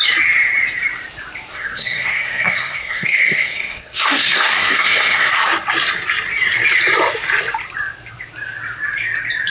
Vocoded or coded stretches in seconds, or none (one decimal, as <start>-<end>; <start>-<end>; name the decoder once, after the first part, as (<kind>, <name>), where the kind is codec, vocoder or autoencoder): 1.5-5.3 (codec, SNAC)